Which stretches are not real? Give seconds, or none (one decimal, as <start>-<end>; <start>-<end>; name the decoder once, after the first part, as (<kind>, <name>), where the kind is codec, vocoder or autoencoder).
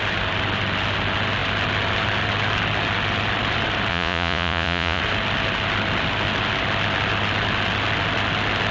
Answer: 3.9-5.0 (vocoder, Vocos)